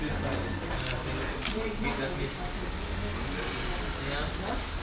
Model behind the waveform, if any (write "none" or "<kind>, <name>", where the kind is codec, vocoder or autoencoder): none